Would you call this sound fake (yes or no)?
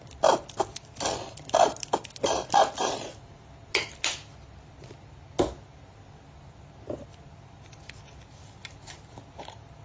no